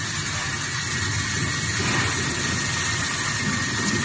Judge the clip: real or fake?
real